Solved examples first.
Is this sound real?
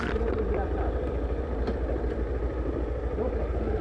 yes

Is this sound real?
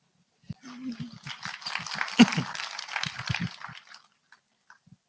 no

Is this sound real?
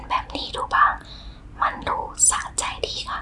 yes